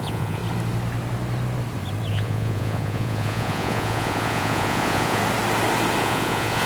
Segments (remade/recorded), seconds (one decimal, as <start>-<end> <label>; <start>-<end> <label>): 0.0-0.4 remade; 0.4-2.1 recorded; 2.1-5.2 remade; 5.2-6.0 recorded; 6.0-6.7 remade